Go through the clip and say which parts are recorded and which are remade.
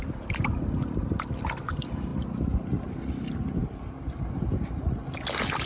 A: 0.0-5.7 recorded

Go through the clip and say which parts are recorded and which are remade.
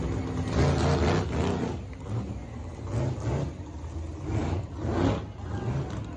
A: 0.0-4.4 recorded; 4.4-5.1 remade; 5.1-6.2 recorded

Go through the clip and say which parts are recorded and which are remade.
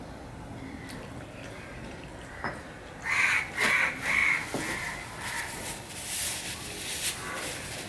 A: 0.0-2.1 remade; 2.1-3.7 recorded; 3.7-4.2 remade; 4.2-5.4 recorded; 5.4-7.9 remade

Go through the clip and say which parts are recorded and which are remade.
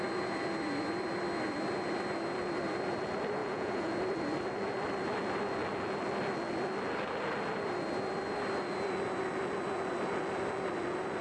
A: 0.0-3.4 recorded; 3.4-3.9 remade; 3.9-11.2 recorded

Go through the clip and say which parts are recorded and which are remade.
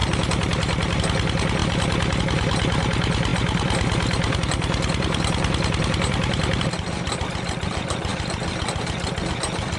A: 0.0-1.0 recorded; 1.0-1.6 remade; 1.6-2.2 recorded; 2.2-8.1 remade; 8.1-9.3 recorded; 9.3-9.8 remade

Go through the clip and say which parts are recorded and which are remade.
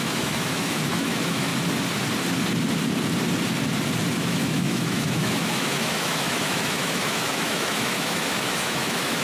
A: 0.0-1.5 remade; 1.5-4.1 recorded; 4.1-9.2 remade